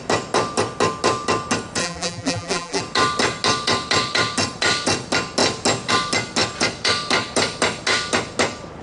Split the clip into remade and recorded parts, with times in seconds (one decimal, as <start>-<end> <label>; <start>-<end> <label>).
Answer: 0.0-1.8 recorded; 1.8-2.8 remade; 2.8-8.8 recorded